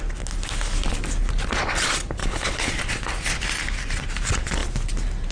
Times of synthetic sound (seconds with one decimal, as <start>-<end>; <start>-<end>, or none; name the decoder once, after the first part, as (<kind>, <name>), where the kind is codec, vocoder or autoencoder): 2.2-2.7 (codec, HILCodec)